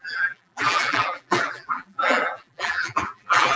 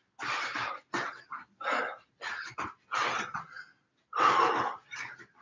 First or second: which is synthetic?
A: first